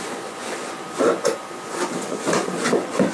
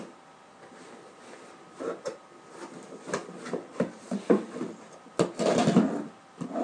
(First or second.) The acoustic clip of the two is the second